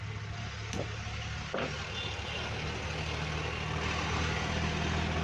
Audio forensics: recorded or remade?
recorded